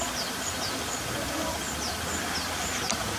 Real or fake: real